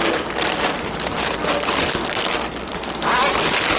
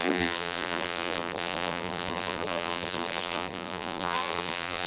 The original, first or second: first